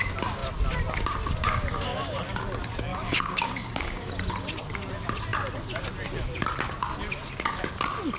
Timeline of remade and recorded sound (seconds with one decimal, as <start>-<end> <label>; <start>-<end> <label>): 0.0-1.4 recorded; 1.4-2.1 remade; 2.1-2.9 recorded; 2.9-4.1 remade; 4.1-8.2 recorded

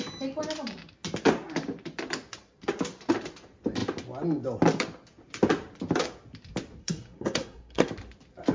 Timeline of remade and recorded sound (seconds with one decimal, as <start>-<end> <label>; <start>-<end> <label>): 0.0-6.8 recorded; 6.8-7.9 remade; 7.9-8.5 recorded

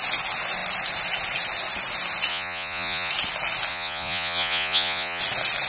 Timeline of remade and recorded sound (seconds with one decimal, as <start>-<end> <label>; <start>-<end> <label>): 0.0-2.3 recorded; 2.3-3.1 remade; 3.1-3.7 recorded; 3.7-5.2 remade; 5.2-5.7 recorded

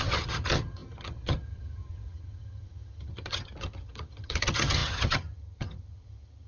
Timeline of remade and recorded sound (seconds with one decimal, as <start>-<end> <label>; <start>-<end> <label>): 0.0-6.5 remade